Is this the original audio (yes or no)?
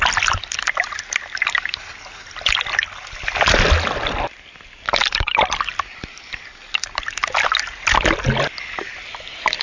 yes